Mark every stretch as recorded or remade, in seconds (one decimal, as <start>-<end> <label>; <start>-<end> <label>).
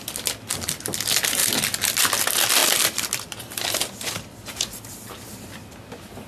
0.0-2.6 recorded; 2.6-5.1 remade; 5.1-6.3 recorded